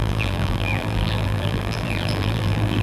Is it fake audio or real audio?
fake